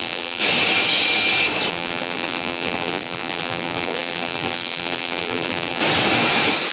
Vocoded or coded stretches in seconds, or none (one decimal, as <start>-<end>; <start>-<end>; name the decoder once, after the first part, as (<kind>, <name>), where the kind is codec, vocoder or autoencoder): 0.0-0.4 (vocoder, BigVGAN v2); 1.7-5.8